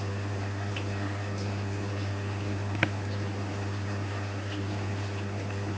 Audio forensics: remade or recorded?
remade